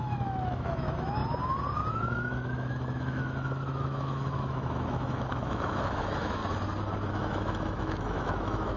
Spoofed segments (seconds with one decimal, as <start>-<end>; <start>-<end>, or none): 0.0-1.2; 1.9-6.4; 7.1-8.8